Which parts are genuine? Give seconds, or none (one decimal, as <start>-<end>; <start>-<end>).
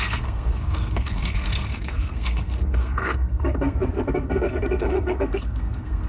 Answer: none